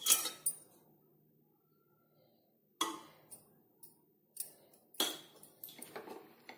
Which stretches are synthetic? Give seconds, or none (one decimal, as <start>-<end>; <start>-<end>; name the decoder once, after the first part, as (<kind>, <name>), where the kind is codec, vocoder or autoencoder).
none